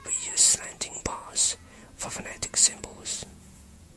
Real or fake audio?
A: fake